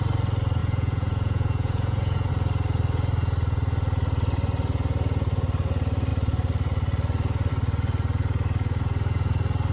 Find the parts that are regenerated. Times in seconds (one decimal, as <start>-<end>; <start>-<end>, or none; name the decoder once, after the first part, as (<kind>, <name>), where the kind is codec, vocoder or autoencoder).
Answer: 0.6-2.3 (vocoder, Vocos)